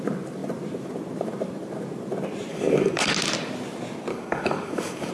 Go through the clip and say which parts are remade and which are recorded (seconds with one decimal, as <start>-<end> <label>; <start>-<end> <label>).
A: 0.0-2.5 recorded; 2.5-3.1 remade; 3.1-4.1 recorded; 4.1-5.1 remade